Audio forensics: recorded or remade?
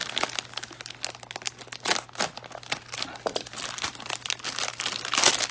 recorded